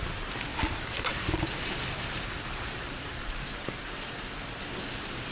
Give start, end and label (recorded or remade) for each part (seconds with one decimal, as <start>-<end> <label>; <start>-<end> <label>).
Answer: 0.0-0.5 recorded; 0.5-3.7 remade; 3.7-5.3 recorded